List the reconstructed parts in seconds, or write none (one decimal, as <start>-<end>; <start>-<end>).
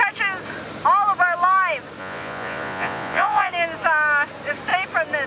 2.0-3.5